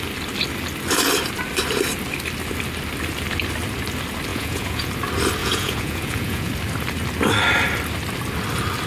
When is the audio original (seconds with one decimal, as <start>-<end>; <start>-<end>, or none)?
0.0-4.3; 4.9-5.4; 6.5-8.9